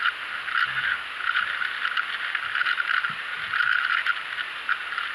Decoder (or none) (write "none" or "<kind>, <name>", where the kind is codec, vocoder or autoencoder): none